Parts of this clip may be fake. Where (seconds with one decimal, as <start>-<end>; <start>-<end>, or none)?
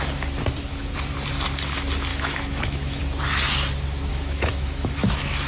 2.1-3.0; 4.1-5.5